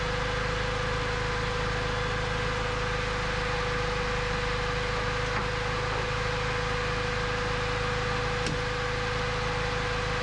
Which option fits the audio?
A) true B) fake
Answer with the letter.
A